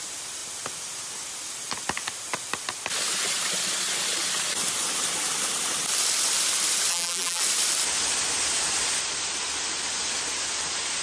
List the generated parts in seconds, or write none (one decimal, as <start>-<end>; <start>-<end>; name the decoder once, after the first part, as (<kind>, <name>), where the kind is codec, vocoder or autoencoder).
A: 6.9-7.4 (vocoder, BigVGAN v2)